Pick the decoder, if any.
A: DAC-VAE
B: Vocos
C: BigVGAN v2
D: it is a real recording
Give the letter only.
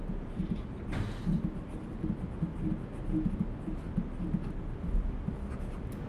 D